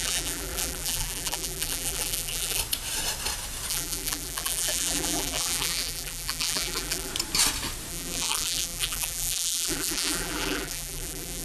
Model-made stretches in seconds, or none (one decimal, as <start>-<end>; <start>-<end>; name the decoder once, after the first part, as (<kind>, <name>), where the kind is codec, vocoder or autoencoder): 0.0-2.6 (vocoder, BigVGAN v2); 3.7-7.1; 7.9-11.4